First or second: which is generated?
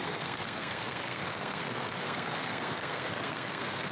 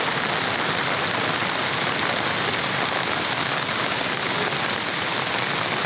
first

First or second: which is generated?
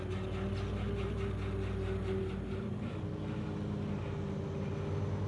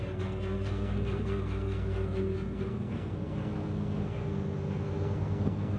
second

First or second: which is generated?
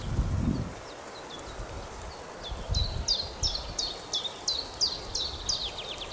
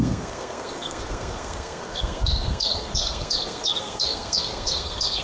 second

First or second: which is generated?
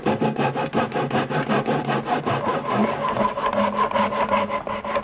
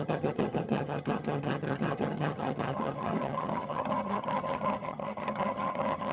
second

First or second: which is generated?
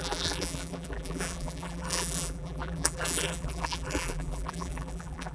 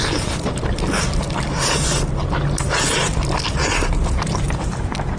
first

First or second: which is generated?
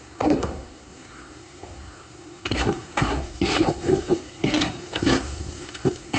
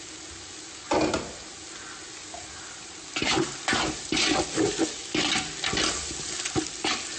first